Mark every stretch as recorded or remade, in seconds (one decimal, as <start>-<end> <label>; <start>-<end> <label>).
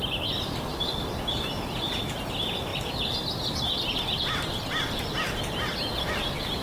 0.0-2.7 recorded; 2.7-5.4 remade; 5.4-6.6 recorded